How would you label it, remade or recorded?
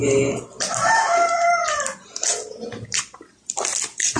recorded